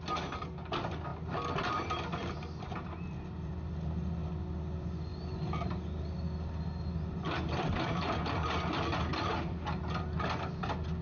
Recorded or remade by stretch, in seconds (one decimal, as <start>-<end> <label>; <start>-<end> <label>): 0.0-11.0 recorded